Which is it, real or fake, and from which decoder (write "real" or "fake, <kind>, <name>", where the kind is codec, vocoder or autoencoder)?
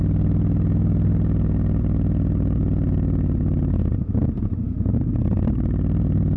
real